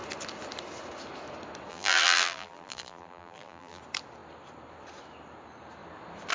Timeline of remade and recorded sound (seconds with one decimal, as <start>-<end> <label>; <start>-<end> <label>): 0.0-1.7 recorded; 1.7-3.8 remade; 3.8-6.3 recorded